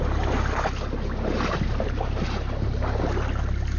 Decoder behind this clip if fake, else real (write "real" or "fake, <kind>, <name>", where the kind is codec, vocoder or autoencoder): real